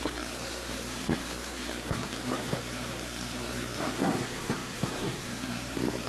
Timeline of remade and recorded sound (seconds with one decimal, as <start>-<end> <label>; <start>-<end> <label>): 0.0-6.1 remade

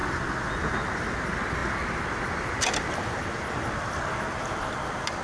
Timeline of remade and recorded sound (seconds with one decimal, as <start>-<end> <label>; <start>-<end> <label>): 0.0-5.2 recorded

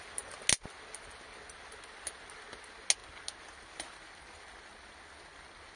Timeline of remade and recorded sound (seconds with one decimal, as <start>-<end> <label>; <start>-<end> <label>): 0.0-5.8 recorded

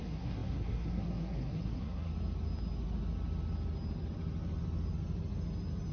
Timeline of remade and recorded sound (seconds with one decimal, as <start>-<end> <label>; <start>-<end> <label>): 0.0-2.1 remade; 2.1-5.9 recorded

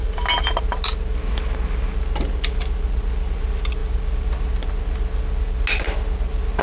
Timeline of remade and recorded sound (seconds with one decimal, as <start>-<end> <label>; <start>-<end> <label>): 0.0-6.6 recorded

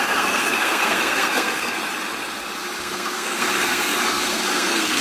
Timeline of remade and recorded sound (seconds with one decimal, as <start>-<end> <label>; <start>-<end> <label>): 0.0-1.8 remade; 1.8-2.8 recorded; 2.8-5.0 remade

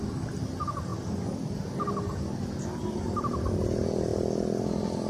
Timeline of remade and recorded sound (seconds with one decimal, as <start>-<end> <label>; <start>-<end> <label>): 0.0-5.1 recorded